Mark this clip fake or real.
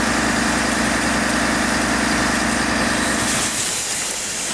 real